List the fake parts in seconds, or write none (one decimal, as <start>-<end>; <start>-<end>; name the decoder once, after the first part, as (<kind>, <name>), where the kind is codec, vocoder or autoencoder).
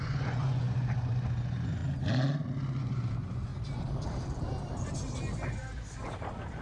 0.0-1.8 (vocoder, Vocos); 2.8-3.5